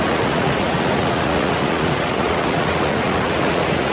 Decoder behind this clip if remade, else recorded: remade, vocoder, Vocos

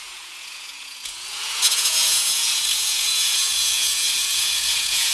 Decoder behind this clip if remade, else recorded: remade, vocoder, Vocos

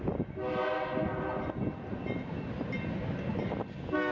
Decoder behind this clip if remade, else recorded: recorded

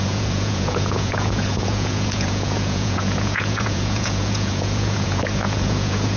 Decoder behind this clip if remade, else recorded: remade, vocoder, Vocos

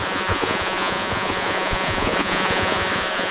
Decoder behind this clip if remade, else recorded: remade, vocoder, Vocos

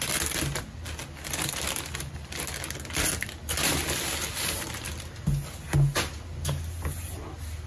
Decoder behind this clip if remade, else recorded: recorded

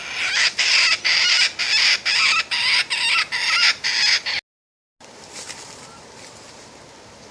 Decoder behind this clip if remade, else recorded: recorded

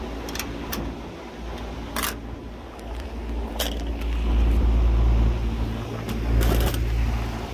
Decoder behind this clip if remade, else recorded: recorded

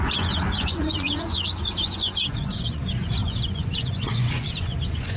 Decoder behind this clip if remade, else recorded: remade, vocoder, Vocos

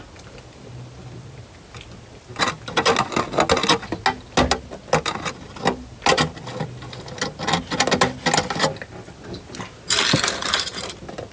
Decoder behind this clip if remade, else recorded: recorded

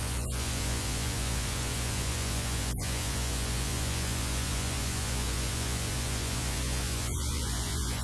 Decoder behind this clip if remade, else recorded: remade, vocoder, Vocos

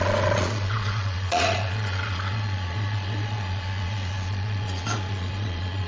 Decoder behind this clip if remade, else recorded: remade, vocoder, Vocos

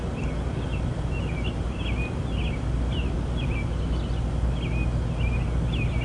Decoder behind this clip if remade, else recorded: recorded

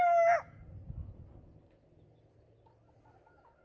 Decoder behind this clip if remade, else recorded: recorded